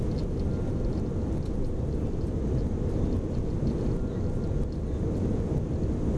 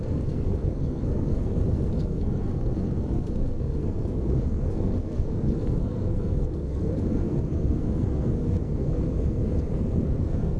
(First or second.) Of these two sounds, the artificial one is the second